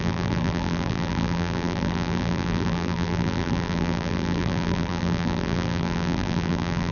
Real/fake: fake